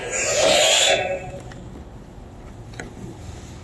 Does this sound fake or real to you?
real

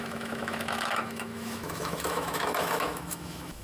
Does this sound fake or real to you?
fake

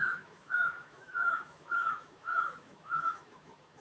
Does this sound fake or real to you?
fake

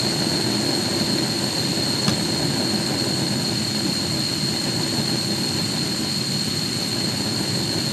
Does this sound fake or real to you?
real